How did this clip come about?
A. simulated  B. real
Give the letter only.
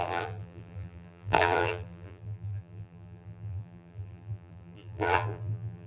A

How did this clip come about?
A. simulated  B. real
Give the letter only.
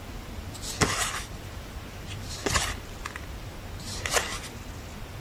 B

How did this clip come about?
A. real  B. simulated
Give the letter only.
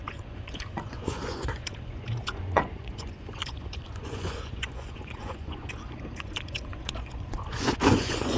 B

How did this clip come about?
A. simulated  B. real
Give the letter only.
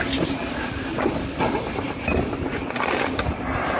B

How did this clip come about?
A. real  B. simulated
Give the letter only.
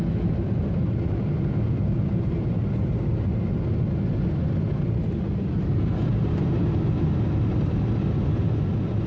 A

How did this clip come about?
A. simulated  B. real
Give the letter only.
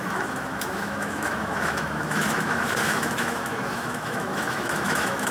A